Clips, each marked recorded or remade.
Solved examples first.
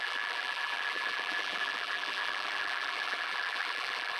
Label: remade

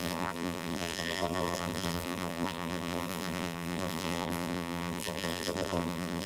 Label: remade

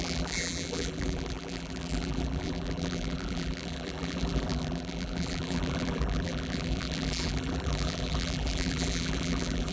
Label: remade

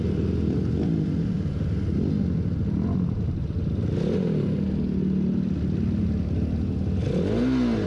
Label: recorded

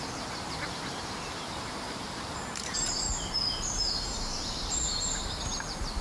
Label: remade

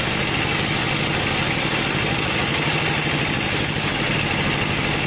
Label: recorded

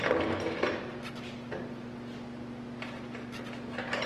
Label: recorded